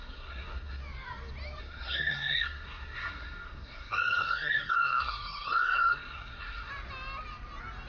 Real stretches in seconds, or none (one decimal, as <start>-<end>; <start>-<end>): 0.8-1.6; 6.7-7.9